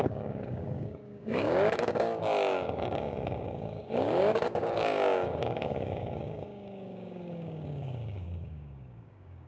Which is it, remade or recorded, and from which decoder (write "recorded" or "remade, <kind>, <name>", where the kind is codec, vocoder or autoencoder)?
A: remade, codec, DAC